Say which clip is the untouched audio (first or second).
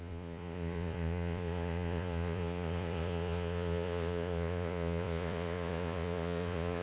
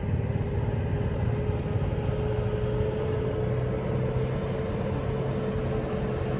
second